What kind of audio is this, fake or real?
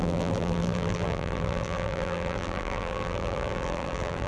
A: fake